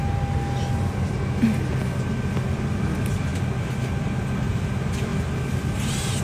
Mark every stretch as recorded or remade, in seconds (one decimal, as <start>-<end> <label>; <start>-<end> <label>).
0.0-6.2 recorded